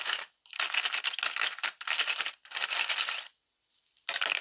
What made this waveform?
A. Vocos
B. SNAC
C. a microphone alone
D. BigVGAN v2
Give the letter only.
C